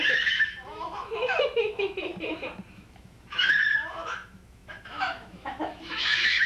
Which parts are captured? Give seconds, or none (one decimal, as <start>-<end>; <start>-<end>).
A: 2.1-2.7